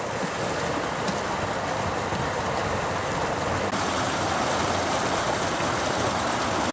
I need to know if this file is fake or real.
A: real